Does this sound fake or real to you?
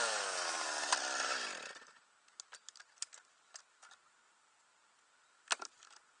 real